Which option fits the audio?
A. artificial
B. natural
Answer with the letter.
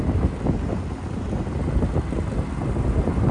B